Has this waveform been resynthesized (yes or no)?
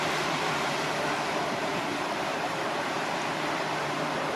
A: yes